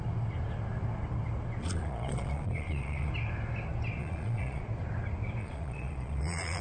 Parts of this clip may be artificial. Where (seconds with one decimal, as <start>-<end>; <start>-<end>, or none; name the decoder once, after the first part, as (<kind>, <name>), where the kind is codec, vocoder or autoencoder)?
1.6-3.1 (vocoder, Vocos); 4.0-4.6; 5.4-6.6